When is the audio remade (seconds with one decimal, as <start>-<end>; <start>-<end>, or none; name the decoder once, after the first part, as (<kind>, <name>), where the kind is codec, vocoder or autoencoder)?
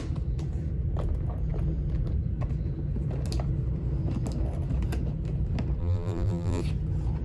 5.8-6.6 (vocoder, BigVGAN v2)